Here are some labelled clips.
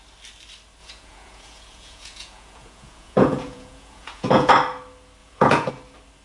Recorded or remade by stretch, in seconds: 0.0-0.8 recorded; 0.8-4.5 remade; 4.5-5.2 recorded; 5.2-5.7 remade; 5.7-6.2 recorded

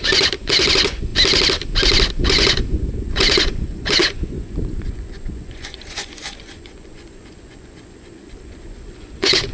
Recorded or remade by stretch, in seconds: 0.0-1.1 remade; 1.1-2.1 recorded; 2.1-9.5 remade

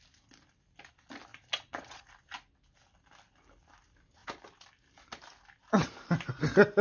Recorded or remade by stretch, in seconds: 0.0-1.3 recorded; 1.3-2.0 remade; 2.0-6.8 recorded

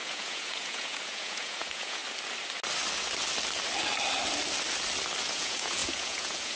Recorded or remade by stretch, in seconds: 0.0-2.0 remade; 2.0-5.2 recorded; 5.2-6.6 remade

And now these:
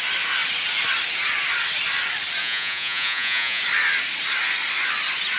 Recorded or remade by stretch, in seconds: 0.0-2.4 recorded; 2.4-3.6 remade; 3.6-5.4 recorded